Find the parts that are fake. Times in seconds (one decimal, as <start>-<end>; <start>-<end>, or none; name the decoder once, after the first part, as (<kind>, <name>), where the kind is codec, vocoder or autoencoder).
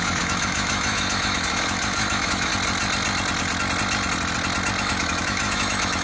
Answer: 0.0-2.5 (autoencoder, DAC-VAE); 4.8-6.0